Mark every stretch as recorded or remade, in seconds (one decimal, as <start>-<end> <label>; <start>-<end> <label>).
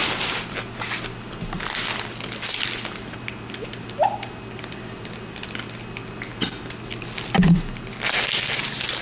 0.0-9.0 recorded